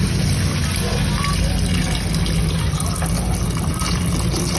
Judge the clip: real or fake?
real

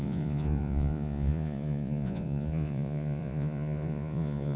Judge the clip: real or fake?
fake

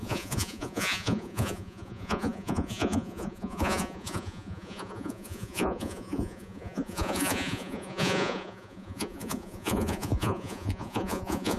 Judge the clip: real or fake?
fake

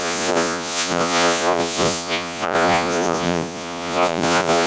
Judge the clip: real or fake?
fake